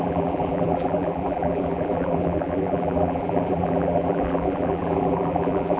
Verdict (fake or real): fake